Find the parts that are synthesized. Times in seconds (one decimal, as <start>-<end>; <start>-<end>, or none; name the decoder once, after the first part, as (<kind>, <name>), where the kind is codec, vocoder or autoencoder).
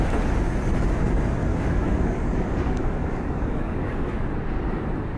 1.5-4.1 (codec, DAC)